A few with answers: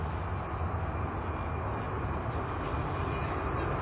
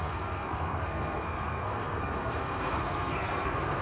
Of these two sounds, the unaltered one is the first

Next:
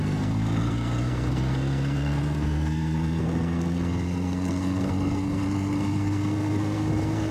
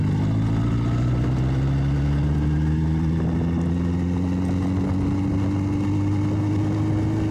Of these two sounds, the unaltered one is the second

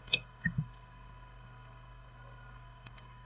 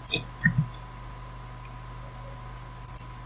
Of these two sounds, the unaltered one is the second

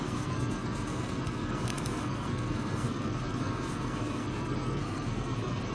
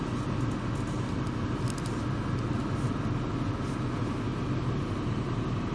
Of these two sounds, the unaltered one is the second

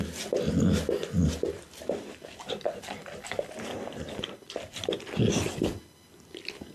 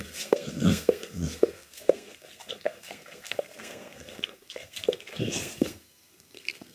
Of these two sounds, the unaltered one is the first